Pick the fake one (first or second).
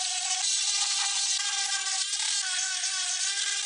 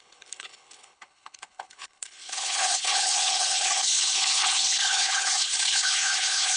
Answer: second